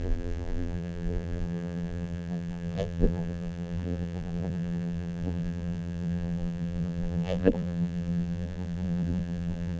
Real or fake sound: fake